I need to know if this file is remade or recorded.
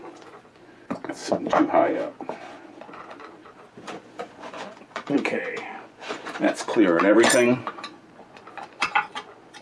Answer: remade